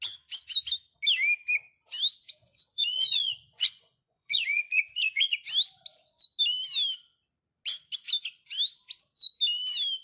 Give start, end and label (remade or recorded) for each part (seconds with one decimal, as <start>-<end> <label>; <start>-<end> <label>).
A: 0.0-2.2 recorded; 2.2-5.4 remade; 5.4-10.0 recorded